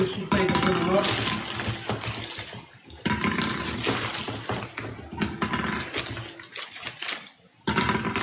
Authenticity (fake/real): real